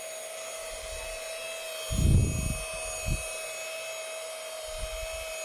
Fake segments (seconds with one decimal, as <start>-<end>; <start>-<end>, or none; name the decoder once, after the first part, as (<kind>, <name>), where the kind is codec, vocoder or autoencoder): none